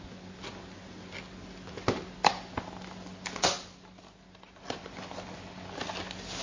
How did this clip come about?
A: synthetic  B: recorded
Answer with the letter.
B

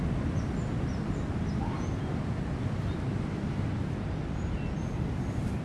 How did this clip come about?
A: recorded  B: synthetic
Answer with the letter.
A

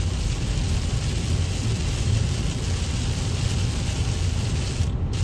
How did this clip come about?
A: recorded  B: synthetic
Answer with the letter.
A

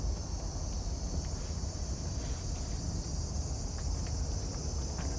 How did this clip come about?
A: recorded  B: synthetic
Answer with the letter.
A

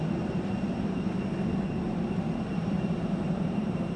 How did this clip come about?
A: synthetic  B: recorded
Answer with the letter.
A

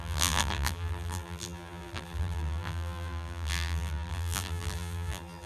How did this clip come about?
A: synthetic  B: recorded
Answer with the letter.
A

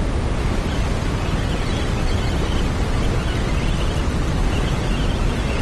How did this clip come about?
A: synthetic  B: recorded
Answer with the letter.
B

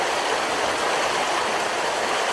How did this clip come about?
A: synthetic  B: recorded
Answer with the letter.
B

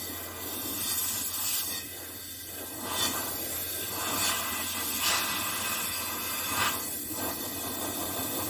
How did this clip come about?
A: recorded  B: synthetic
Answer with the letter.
A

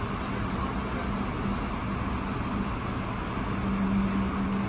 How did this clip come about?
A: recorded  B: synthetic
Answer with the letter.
A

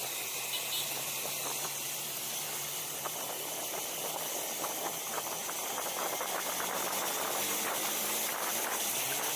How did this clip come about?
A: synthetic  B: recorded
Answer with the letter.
B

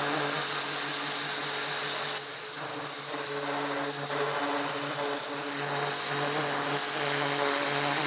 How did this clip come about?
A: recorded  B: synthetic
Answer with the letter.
A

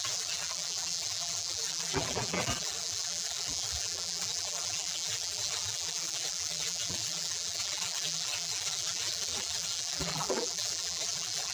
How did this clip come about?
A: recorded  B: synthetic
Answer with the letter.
B